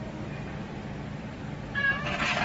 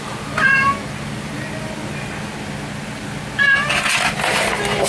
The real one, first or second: second